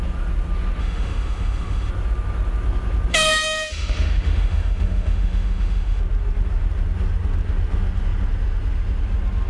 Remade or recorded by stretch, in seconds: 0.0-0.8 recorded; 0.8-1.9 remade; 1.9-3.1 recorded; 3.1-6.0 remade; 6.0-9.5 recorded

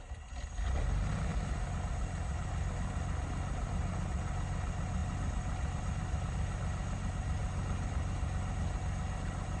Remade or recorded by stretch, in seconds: 0.0-9.6 recorded

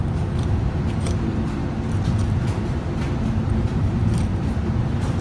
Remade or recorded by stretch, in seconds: 0.0-1.6 remade; 1.6-3.5 recorded; 3.5-4.3 remade; 4.3-4.8 recorded; 4.8-5.2 remade